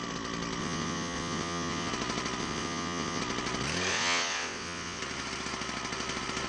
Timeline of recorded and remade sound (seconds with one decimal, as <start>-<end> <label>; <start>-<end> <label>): 0.0-0.6 recorded; 0.6-1.9 remade; 1.9-2.4 recorded; 2.4-3.2 remade; 3.2-3.9 recorded; 3.9-5.0 remade; 5.0-6.5 recorded